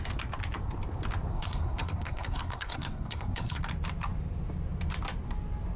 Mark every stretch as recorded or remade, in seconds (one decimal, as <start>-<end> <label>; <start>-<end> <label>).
0.0-1.3 recorded; 1.3-3.6 remade; 3.6-5.8 recorded